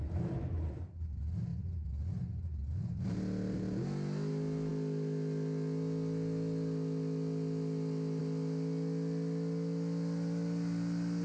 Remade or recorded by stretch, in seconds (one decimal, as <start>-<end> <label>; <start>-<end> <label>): 0.0-11.2 recorded